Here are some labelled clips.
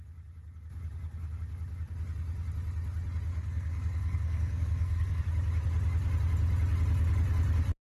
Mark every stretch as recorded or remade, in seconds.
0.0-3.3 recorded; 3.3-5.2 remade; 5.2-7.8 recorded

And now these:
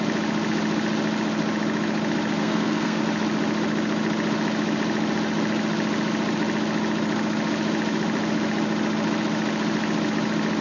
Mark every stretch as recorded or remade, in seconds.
0.0-2.4 recorded; 2.4-3.0 remade; 3.0-10.6 recorded

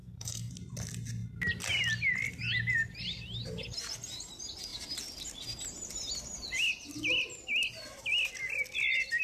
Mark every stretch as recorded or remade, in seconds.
0.0-0.5 remade; 0.5-9.2 recorded

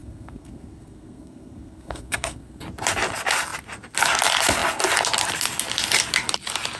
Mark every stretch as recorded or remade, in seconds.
0.0-2.6 remade; 2.6-6.8 recorded

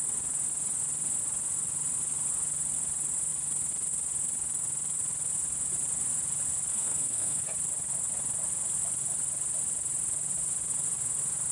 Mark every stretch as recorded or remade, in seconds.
0.0-6.7 recorded; 6.7-7.4 remade; 7.4-11.5 recorded

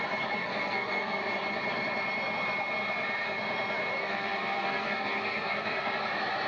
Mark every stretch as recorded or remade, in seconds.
0.0-0.4 recorded; 0.4-1.2 remade; 1.2-4.0 recorded; 4.0-5.9 remade; 5.9-6.5 recorded

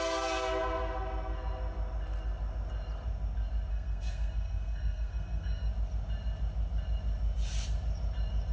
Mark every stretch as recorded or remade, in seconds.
0.0-3.7 recorded; 3.7-5.7 remade; 5.7-8.5 recorded

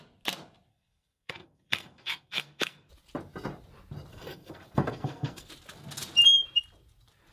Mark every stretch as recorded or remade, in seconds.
0.0-0.7 recorded; 0.7-2.9 remade; 2.9-4.1 recorded; 4.1-5.5 remade; 5.5-7.3 recorded